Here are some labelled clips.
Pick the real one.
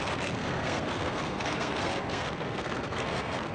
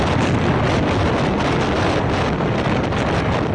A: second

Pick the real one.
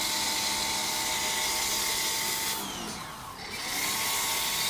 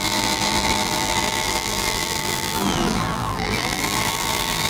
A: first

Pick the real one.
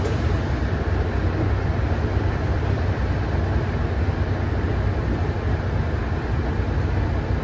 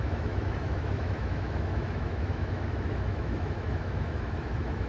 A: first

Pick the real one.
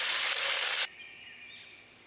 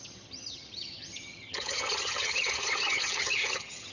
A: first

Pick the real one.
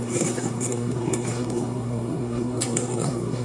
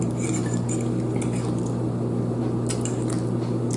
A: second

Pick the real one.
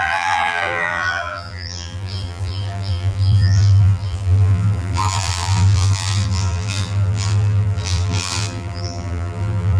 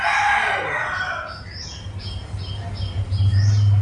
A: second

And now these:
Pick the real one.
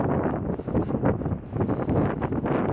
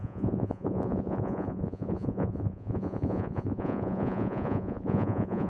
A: first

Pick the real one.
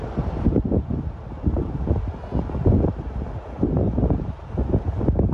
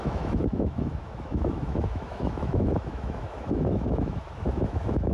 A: first